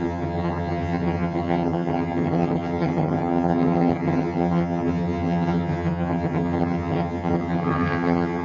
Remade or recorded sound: remade